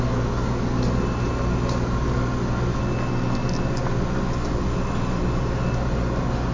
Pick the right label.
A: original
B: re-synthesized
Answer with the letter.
A